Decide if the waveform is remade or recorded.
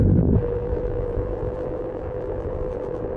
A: remade